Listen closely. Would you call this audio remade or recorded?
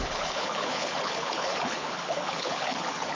remade